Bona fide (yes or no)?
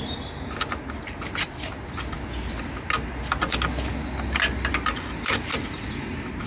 yes